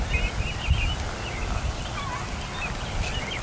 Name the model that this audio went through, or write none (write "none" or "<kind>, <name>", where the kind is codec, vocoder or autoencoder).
none